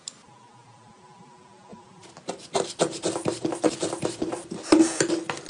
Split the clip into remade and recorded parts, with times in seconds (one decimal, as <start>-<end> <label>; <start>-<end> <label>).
0.0-1.7 recorded; 1.7-5.0 remade; 5.0-5.5 recorded